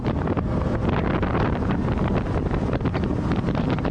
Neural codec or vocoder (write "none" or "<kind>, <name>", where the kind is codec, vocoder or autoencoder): none